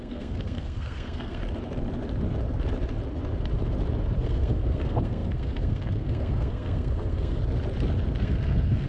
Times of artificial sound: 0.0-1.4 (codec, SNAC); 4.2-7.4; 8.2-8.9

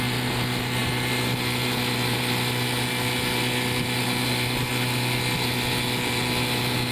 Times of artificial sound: none

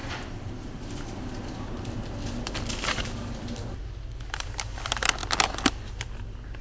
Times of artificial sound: none

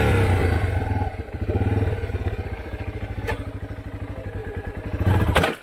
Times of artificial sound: 0.4-3.2 (vocoder, BigVGAN v2)

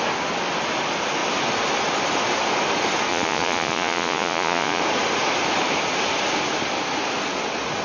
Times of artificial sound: 3.1-4.8 (vocoder, Vocos)